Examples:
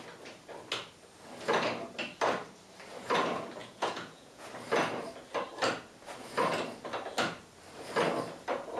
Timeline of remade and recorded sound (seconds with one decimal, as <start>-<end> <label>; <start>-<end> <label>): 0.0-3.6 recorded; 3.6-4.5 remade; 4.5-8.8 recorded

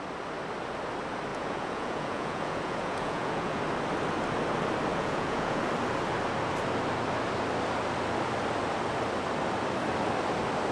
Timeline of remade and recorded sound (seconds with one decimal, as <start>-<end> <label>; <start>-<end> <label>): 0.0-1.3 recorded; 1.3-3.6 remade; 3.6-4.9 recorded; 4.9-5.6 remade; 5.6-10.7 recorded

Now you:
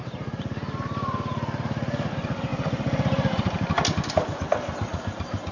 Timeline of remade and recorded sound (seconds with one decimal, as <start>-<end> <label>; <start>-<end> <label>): 0.0-5.5 recorded

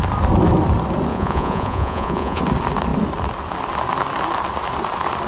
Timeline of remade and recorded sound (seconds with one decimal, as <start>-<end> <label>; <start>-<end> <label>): 0.0-1.1 recorded; 1.1-2.4 remade; 2.4-5.3 recorded

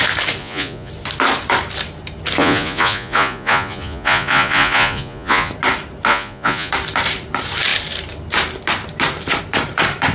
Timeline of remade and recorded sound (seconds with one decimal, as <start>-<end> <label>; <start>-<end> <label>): 0.0-0.4 recorded; 0.4-0.9 remade; 0.9-2.4 recorded; 2.4-5.5 remade; 5.5-6.1 recorded; 6.1-6.7 remade; 6.7-10.1 recorded

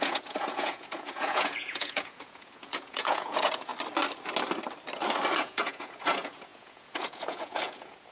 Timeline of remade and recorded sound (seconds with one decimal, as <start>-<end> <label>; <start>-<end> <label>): 0.0-3.7 remade; 3.7-5.3 recorded; 5.3-8.1 remade